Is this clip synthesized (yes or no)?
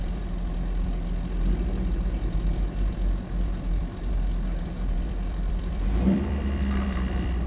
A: yes